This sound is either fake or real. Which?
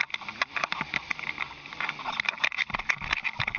fake